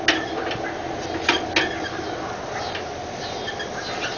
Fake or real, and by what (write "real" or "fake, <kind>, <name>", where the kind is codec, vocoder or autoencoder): real